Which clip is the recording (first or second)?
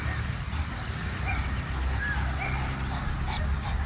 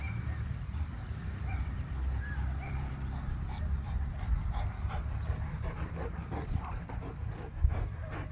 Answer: first